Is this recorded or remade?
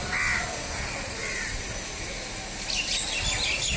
recorded